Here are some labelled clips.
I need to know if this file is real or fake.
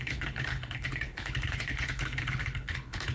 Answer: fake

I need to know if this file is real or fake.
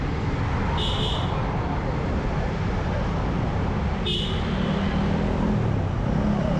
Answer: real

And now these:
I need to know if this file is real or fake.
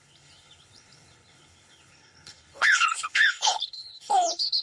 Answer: fake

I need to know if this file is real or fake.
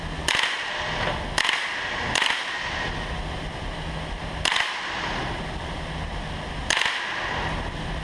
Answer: real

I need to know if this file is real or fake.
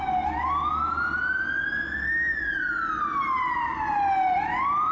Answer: real